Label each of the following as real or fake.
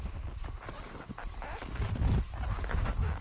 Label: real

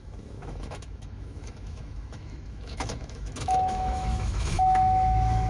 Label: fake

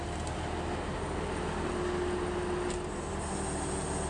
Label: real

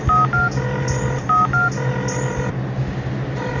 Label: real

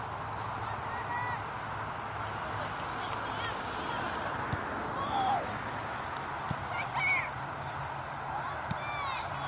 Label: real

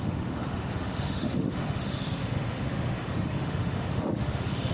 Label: fake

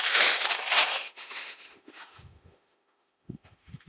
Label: fake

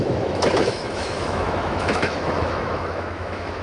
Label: fake